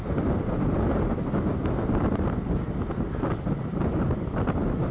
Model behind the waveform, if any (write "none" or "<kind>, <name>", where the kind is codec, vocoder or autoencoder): none